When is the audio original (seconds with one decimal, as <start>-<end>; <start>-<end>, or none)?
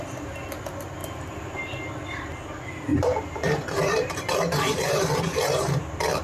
0.0-1.0; 1.6-2.9; 5.8-6.2